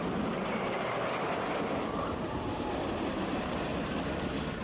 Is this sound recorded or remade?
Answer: recorded